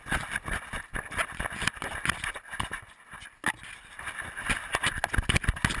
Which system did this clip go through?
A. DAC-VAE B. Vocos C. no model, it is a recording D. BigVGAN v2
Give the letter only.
C